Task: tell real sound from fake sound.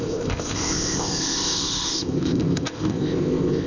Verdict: fake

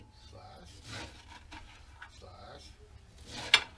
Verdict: real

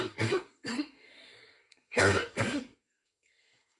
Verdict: fake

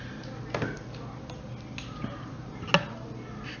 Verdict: real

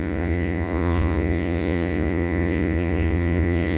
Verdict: fake